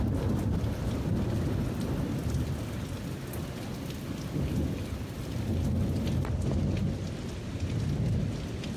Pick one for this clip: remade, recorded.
recorded